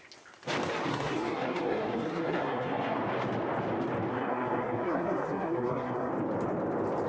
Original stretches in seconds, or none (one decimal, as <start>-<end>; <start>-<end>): 0.0-0.9; 3.0-4.1; 6.1-7.1